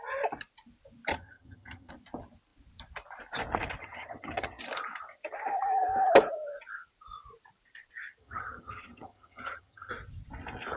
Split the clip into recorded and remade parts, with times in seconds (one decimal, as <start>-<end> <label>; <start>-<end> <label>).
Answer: 0.0-1.1 recorded; 1.1-1.9 remade; 1.9-3.8 recorded; 3.8-4.6 remade; 4.6-8.2 recorded; 8.2-9.9 remade; 9.9-10.8 recorded